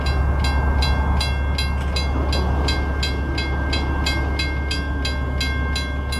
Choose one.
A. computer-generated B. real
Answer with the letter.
B